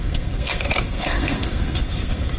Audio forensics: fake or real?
fake